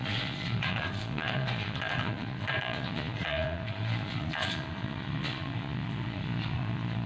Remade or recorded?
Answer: remade